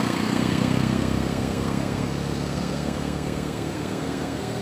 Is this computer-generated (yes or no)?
yes